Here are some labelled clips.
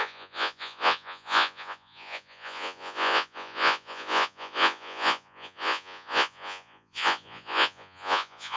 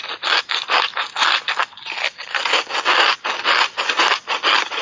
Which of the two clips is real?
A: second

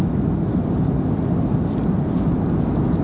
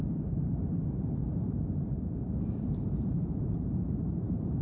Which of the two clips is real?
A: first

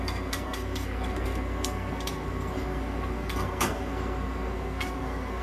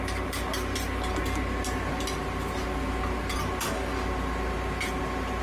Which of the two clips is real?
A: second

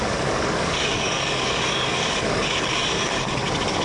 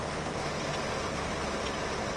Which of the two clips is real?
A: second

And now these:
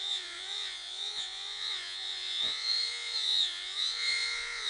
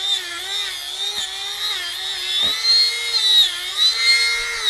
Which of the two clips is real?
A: second